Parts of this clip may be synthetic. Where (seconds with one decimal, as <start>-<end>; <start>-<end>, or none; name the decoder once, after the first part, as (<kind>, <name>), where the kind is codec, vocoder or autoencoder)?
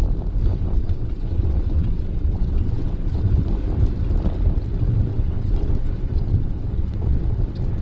0.5-3.4 (vocoder, WaveNeXt); 5.1-7.2